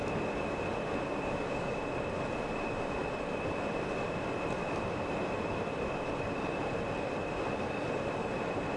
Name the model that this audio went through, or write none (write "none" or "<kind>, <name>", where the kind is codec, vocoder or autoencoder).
none